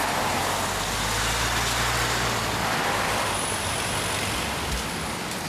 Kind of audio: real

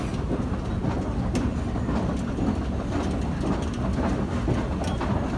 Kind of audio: real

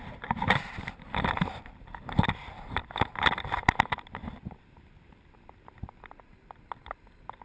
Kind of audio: fake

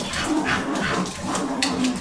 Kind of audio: fake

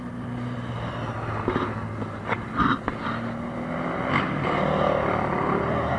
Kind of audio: real